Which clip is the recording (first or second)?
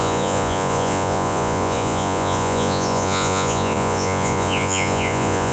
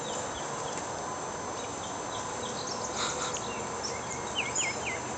second